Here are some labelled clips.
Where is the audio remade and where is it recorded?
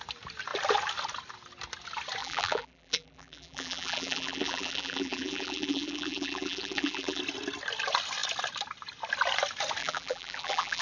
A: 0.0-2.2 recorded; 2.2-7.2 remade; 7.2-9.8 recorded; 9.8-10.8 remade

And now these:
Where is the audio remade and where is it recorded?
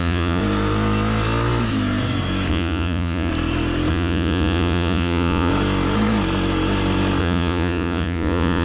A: 0.0-0.4 remade; 0.4-2.5 recorded; 2.5-3.3 remade; 3.3-3.9 recorded; 3.9-5.5 remade; 5.5-7.2 recorded; 7.2-8.6 remade